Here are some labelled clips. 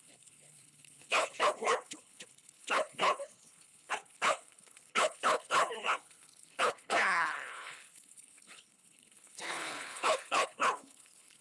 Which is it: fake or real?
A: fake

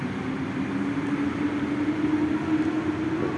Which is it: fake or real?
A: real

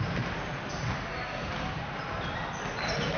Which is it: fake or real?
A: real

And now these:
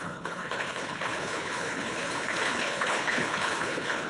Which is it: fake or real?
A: fake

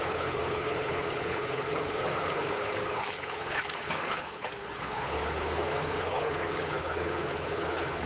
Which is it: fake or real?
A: fake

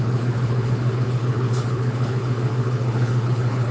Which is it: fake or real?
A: fake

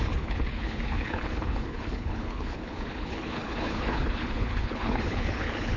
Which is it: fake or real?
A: fake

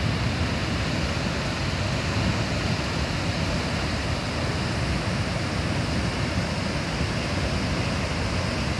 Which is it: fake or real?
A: real